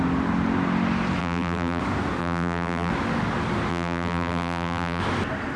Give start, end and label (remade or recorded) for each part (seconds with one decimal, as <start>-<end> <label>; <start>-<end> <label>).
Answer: 0.0-1.2 recorded; 1.2-1.8 remade; 1.8-2.2 recorded; 2.2-2.9 remade; 2.9-3.7 recorded; 3.7-5.0 remade; 5.0-5.6 recorded